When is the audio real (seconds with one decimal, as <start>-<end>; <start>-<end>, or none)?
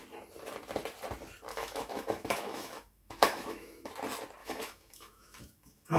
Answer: 0.0-1.5; 3.9-4.4